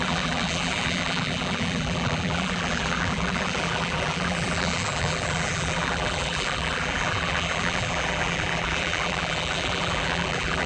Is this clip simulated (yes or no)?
yes